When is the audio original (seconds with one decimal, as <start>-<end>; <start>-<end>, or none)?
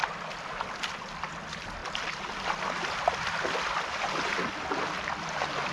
0.0-5.7